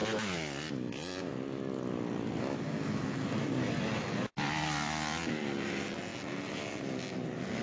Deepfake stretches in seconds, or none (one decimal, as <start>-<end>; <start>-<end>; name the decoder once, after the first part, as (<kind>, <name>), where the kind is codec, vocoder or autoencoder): none